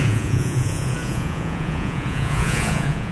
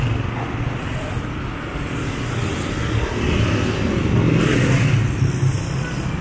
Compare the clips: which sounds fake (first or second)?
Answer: first